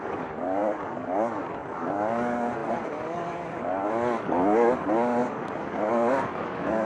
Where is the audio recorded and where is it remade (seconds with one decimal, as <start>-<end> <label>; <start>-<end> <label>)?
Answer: 0.0-6.9 remade